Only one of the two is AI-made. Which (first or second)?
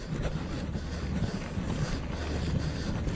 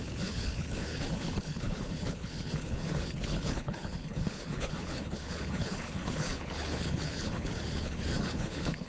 second